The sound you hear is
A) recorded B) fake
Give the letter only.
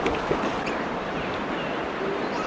A